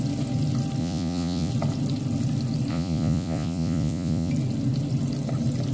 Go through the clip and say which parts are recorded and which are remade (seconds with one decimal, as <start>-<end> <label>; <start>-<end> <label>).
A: 0.0-0.8 recorded; 0.8-1.5 remade; 1.5-2.7 recorded; 2.7-4.3 remade; 4.3-5.7 recorded